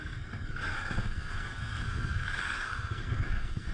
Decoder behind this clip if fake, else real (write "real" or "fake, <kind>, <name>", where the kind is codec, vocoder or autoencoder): fake, codec, SNAC